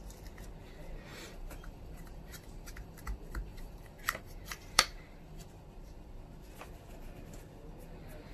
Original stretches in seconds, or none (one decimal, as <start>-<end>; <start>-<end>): 0.0-1.1; 5.5-8.3